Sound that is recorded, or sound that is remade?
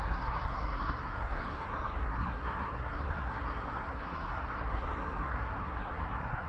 remade